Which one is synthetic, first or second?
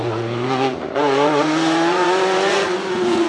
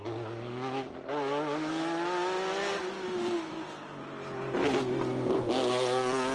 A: first